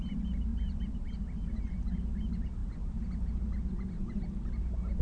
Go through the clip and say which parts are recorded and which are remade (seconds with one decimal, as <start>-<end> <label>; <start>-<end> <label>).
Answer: 0.0-0.5 recorded; 0.5-1.5 remade; 1.5-5.0 recorded